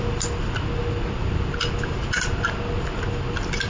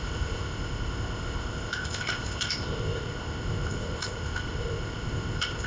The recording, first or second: first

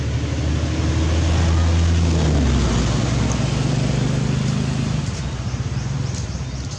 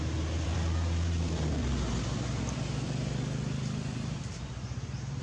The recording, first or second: first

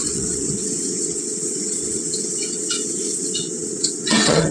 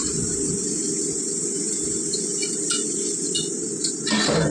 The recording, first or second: second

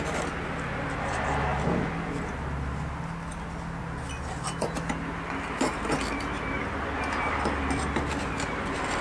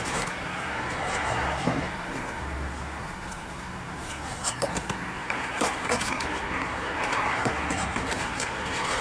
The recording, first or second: first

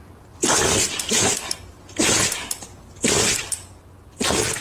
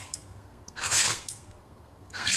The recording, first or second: first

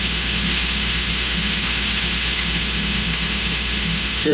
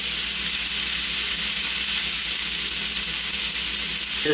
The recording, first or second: second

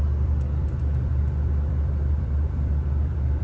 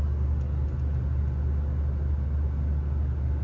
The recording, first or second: second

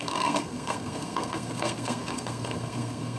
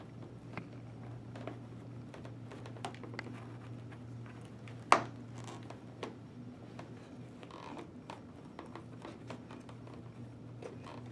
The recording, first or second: second